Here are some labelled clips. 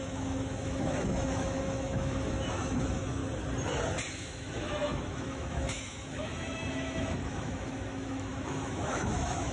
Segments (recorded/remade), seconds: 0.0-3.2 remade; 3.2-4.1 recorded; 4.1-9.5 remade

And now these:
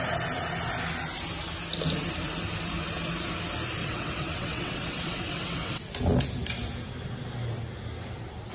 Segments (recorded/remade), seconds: 0.0-3.8 recorded; 3.8-5.8 remade; 5.8-8.5 recorded

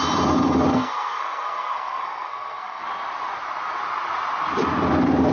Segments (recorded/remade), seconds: 0.0-0.7 recorded; 0.7-2.8 remade; 2.8-5.3 recorded

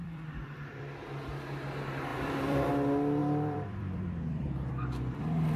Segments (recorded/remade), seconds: 0.0-0.8 remade; 0.8-2.1 recorded; 2.1-2.7 remade; 2.7-3.2 recorded; 3.2-4.7 remade; 4.7-5.6 recorded

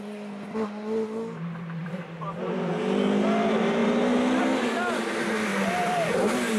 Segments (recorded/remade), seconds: 0.0-1.8 recorded; 1.8-2.3 remade; 2.3-5.5 recorded; 5.5-6.1 remade; 6.1-6.6 recorded